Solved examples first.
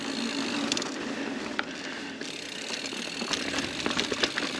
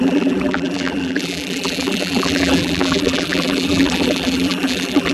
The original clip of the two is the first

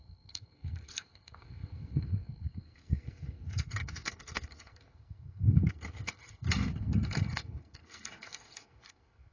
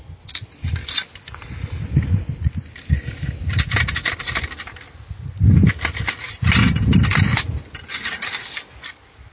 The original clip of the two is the second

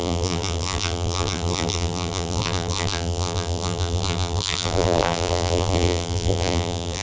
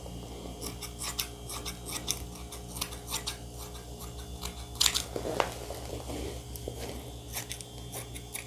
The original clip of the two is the second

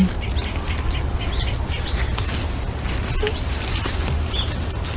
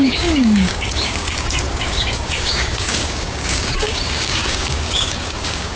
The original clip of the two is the first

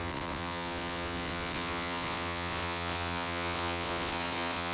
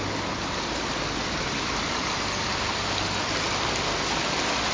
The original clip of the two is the second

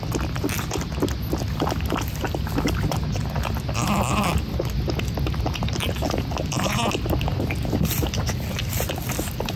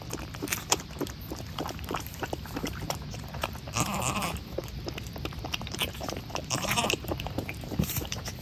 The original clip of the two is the first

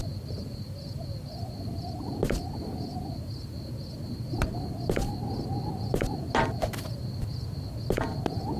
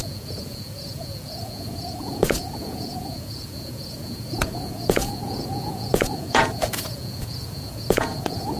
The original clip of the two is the first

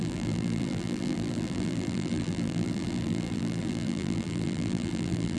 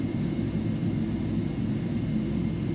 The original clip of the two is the second